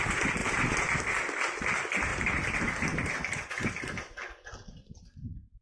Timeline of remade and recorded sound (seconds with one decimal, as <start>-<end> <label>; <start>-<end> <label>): 0.0-0.4 recorded; 0.4-1.0 remade; 1.0-2.1 recorded; 2.1-3.8 remade; 3.8-5.6 recorded